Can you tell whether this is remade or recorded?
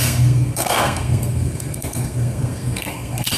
remade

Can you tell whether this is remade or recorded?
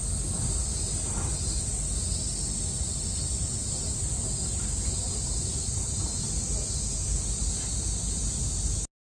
recorded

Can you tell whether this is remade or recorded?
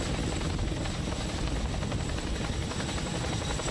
recorded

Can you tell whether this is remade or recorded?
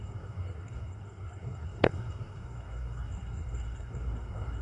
remade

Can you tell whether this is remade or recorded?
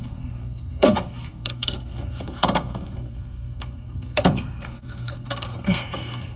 remade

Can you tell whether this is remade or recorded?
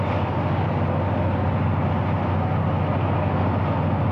recorded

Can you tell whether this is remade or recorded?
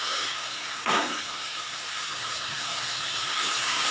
remade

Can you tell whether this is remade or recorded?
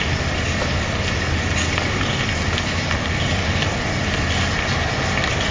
recorded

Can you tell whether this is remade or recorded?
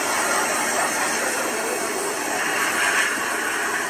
recorded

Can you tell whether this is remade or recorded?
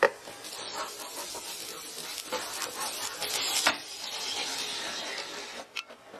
recorded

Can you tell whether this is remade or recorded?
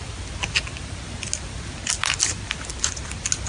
recorded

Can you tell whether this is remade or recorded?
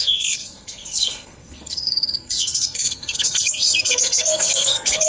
remade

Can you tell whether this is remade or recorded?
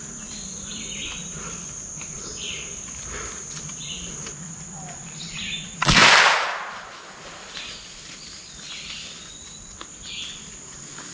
recorded